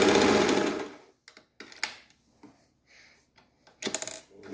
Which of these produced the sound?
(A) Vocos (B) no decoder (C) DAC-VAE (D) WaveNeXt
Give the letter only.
B